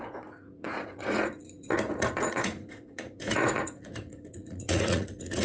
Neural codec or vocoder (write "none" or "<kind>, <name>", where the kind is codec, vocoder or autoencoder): vocoder, Vocos